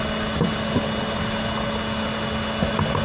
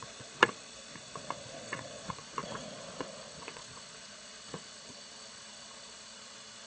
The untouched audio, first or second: first